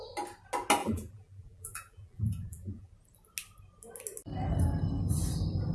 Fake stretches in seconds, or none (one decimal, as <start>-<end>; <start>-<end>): 0.8-2.9